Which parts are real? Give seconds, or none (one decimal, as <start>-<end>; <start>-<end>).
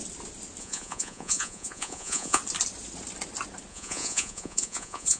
0.0-0.6; 2.4-3.7